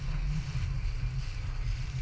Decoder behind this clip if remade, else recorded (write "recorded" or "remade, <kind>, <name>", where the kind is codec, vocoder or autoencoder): recorded